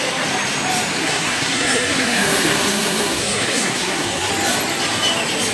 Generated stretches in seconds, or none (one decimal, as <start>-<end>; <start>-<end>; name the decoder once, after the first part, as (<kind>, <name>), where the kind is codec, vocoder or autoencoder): 1.0-4.3 (codec, SNAC)